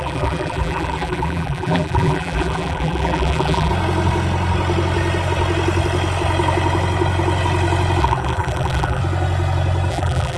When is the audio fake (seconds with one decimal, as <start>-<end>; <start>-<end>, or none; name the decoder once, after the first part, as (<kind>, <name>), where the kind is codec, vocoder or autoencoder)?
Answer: 0.0-3.7 (vocoder, BigVGAN v2); 8.0-9.0; 9.9-10.4